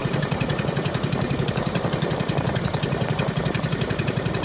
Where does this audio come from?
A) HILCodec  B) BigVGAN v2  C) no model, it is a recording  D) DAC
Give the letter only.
B